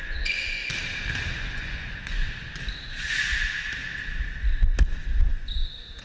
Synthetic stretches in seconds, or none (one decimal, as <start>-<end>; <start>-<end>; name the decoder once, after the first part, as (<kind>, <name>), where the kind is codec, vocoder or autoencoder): 0.0-0.6 (vocoder, Vocos); 1.3-2.2; 2.7-3.3; 5.3-6.0